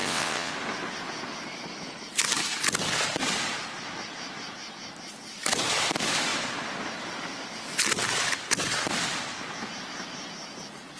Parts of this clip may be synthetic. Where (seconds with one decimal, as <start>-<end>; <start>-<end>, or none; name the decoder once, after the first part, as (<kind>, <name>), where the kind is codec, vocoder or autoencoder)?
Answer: 0.0-0.5 (vocoder, WaveNeXt)